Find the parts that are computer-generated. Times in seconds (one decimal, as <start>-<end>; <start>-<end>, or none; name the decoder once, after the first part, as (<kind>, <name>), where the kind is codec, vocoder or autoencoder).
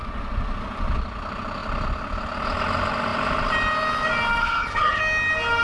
4.4-5.0 (codec, HILCodec)